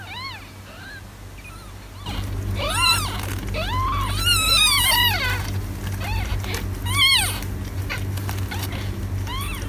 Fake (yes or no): no